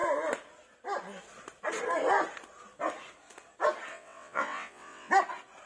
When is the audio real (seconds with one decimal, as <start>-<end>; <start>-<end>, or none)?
0.0-3.9; 5.1-5.7